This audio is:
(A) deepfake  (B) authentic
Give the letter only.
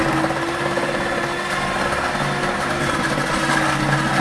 B